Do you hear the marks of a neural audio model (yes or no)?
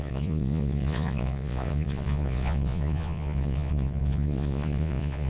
yes